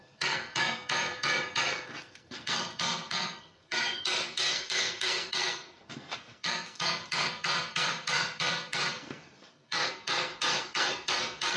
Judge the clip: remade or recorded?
remade